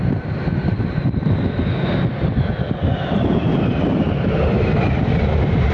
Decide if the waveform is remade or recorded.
recorded